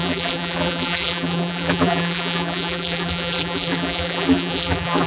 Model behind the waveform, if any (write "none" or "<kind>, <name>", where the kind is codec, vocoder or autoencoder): vocoder, BigVGAN v2